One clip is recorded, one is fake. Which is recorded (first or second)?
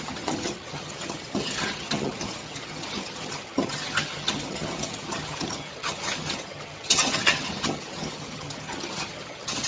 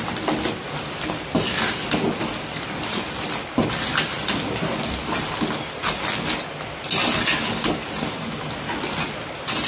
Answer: second